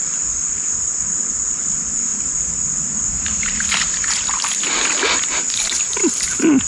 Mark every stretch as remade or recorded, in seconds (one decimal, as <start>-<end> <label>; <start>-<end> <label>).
0.0-6.7 recorded